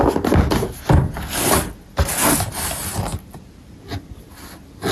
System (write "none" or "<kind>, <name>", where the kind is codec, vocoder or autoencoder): none